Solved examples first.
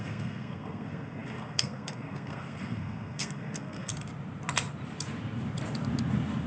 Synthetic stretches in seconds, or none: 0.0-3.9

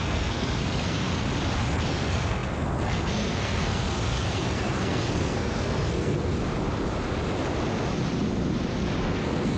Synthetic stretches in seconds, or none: 0.0-1.3; 1.9-6.3; 9.0-9.6

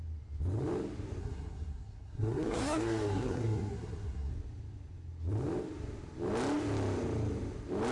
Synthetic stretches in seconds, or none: 1.2-4.3

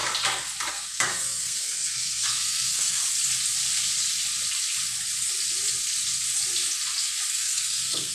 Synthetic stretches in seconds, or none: 0.7-3.0; 7.3-8.1

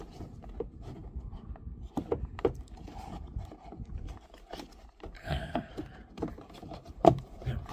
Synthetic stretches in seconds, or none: 5.2-5.7

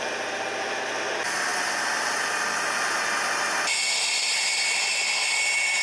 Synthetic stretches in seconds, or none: none

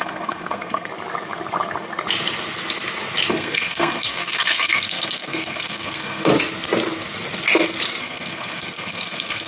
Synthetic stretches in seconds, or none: 0.0-0.9; 3.3-6.3; 8.0-9.5